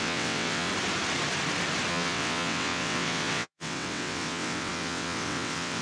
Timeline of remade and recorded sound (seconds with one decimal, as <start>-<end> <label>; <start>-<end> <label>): 0.0-0.7 remade; 0.7-1.9 recorded; 1.9-5.8 remade